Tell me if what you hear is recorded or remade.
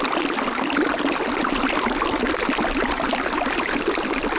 recorded